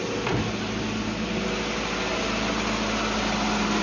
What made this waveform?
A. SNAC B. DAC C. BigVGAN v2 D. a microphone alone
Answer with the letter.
D